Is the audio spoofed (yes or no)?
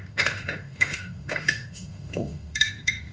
yes